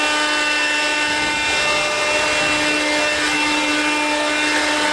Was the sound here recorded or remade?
recorded